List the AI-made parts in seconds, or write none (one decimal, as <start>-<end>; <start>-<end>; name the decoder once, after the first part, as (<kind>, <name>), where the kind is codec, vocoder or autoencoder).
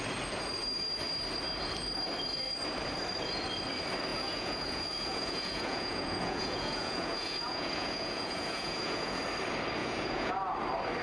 4.1-9.2 (vocoder, Vocos); 9.8-10.3